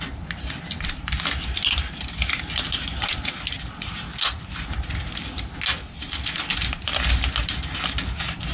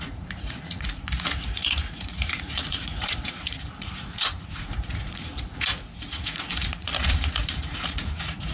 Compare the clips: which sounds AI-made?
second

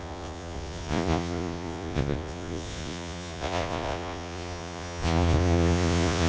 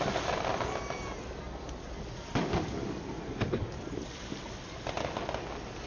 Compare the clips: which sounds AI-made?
first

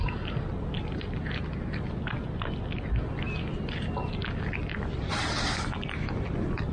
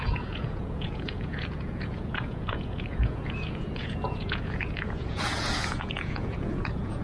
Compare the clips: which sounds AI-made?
second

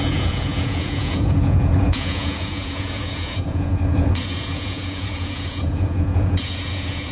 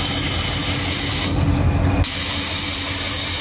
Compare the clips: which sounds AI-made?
first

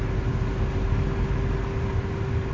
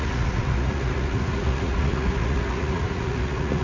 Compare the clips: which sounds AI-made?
second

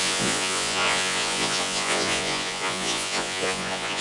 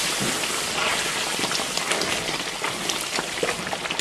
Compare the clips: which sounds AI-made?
first